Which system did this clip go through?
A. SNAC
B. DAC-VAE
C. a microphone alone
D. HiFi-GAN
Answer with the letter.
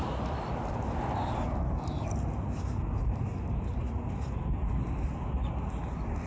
C